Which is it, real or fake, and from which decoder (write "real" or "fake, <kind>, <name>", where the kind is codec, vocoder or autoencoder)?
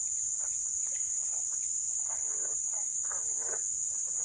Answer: real